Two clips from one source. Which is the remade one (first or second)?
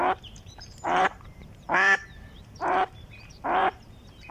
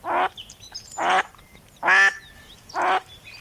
first